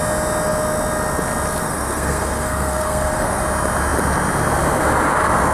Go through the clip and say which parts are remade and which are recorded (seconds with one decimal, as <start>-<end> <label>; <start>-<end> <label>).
0.0-1.6 recorded; 1.6-3.4 remade; 3.4-5.5 recorded

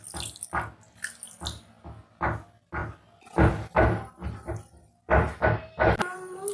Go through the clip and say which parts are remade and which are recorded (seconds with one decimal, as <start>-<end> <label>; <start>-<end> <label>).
0.0-6.5 recorded

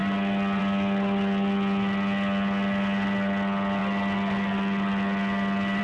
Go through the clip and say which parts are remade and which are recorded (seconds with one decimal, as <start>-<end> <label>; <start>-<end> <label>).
0.0-5.8 recorded

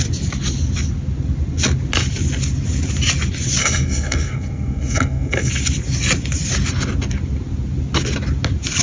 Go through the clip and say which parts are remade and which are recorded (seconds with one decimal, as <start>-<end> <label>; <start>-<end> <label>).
0.0-3.6 recorded; 3.6-5.5 remade; 5.5-8.8 recorded